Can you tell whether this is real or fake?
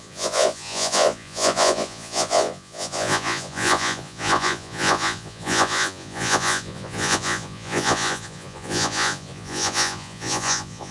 fake